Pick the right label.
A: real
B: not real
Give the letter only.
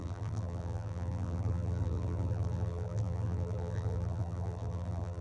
B